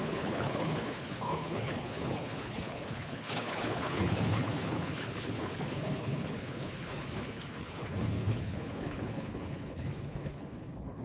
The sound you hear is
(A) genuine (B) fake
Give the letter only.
B